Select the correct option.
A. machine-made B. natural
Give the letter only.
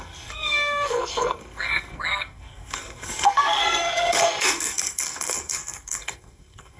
A